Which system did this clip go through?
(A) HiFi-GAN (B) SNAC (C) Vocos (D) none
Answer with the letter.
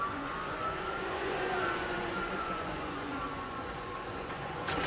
C